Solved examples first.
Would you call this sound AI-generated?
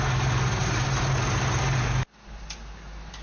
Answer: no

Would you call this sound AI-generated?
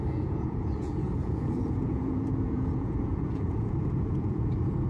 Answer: yes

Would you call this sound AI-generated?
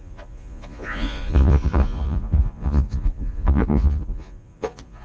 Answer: yes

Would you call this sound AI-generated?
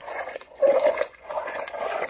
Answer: yes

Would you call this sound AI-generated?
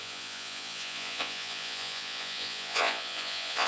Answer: yes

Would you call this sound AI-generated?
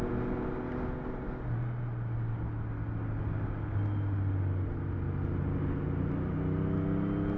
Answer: no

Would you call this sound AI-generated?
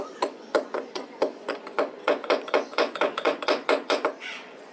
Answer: yes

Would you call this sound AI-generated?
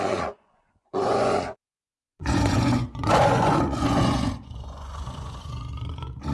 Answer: yes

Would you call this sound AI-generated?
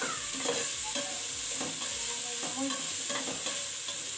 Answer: no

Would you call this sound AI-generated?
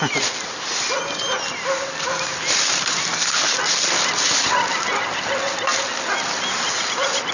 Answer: no